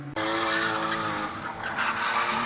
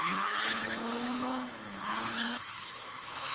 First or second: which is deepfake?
second